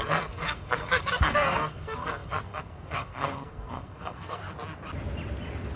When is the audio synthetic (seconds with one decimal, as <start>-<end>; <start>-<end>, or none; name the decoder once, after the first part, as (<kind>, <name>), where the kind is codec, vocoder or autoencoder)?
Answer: 0.0-4.4 (codec, SNAC)